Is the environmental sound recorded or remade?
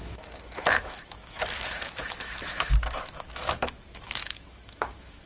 remade